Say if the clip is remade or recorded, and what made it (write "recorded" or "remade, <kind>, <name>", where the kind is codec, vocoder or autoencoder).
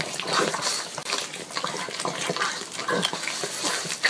recorded